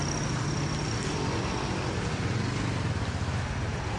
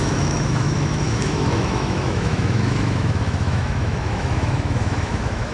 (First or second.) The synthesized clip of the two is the second